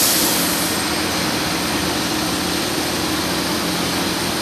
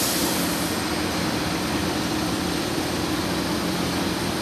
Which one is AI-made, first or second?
second